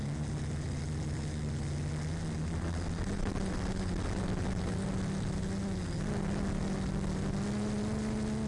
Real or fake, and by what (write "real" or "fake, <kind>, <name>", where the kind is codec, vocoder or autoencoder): real